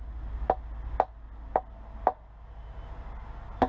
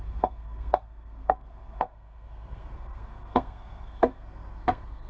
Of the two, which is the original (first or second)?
first